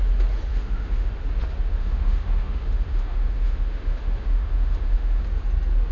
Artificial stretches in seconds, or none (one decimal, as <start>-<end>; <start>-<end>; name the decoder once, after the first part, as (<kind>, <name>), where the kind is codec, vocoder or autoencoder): 0.5-1.1 (autoencoder, DAC-VAE); 1.7-5.2